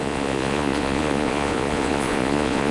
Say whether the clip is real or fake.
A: fake